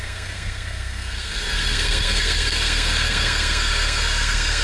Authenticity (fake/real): fake